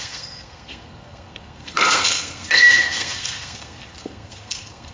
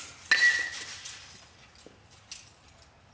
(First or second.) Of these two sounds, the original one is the second